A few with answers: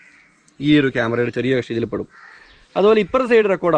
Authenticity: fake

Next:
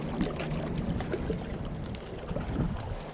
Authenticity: real